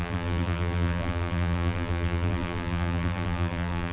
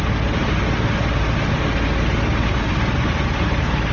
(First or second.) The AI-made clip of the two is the first